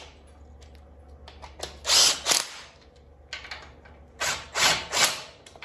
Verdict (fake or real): real